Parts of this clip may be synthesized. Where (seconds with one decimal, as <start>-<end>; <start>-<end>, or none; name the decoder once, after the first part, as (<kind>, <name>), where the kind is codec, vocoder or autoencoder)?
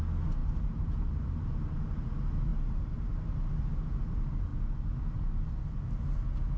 0.4-1.8 (vocoder, BigVGAN v2)